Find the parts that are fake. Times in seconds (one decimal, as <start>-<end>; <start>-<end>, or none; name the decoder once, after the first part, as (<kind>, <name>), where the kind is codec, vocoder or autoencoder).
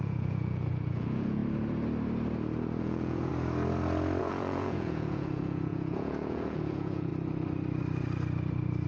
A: 0.0-1.4 (vocoder, Vocos); 2.8-3.3; 4.2-7.1